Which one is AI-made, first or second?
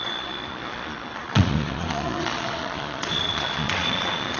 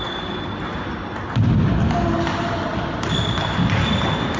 first